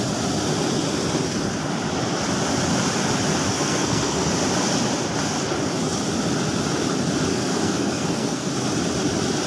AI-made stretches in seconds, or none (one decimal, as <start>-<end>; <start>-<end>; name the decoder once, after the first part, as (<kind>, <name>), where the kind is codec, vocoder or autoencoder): 3.5-4.3 (codec, SNAC); 7.3-8.5